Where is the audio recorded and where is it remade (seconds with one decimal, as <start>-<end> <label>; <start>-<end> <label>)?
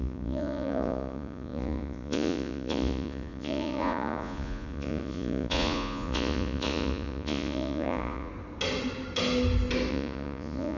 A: 0.0-8.3 remade; 8.3-9.9 recorded; 9.9-10.8 remade